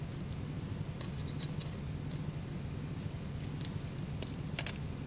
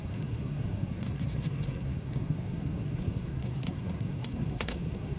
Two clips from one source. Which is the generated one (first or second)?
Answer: second